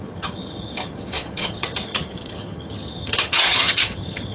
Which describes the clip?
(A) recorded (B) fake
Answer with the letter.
B